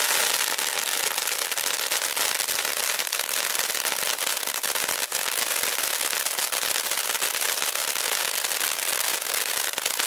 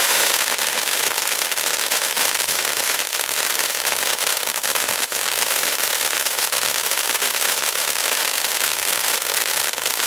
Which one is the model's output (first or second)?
second